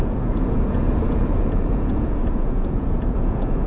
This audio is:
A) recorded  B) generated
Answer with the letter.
B